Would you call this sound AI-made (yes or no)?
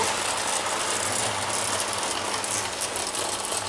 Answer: no